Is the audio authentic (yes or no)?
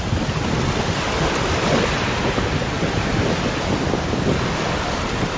yes